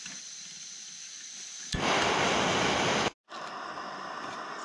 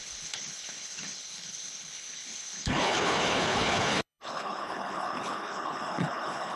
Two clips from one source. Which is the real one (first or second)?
first